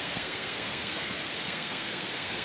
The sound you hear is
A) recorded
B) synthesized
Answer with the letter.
B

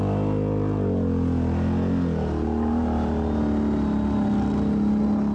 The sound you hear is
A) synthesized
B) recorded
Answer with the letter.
B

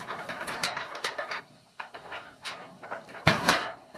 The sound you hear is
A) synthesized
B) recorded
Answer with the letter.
A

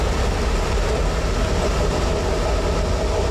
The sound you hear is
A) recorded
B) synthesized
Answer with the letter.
A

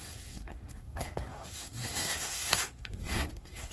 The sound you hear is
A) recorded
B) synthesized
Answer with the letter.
B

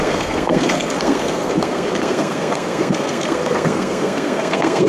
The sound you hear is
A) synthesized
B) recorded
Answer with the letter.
A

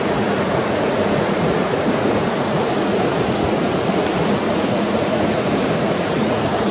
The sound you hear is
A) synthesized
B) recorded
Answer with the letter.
A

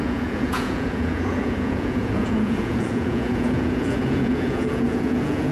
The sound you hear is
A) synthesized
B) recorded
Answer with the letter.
A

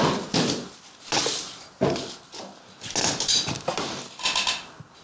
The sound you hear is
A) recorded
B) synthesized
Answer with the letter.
A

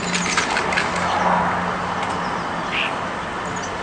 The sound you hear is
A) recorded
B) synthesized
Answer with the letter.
A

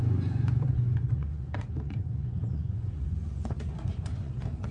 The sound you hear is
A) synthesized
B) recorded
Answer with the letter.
A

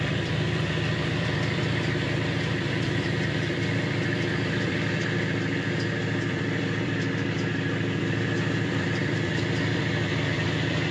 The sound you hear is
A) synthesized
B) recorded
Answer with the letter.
A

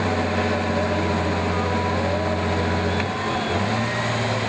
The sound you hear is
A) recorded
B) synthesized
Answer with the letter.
A